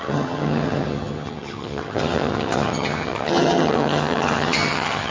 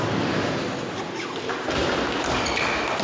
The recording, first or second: second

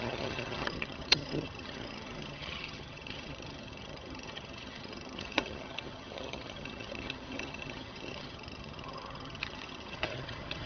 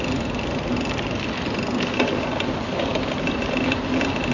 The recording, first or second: second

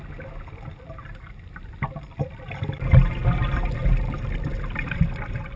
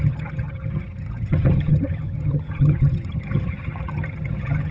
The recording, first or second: first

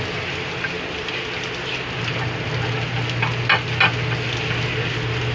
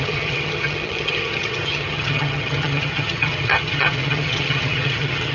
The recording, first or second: first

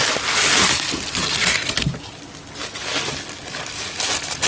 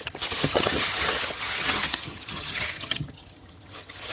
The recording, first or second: first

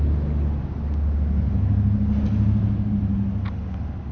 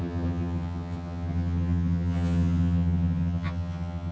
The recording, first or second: first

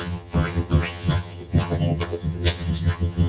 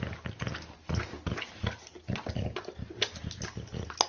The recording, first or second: second